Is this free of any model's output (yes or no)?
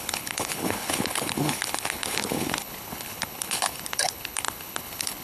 no